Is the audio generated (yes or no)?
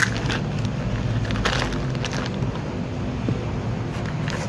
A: no